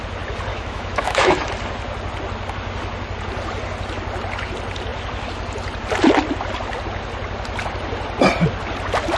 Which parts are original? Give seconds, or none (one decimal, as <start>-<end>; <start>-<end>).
0.0-0.5; 1.5-9.2